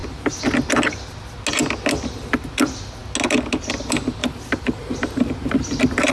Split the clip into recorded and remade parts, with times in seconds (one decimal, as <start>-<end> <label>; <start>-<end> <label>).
0.0-4.2 recorded; 4.2-6.1 remade